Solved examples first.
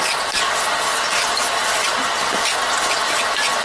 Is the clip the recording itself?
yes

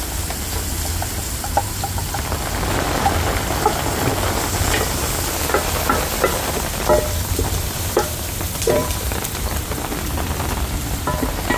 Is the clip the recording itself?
no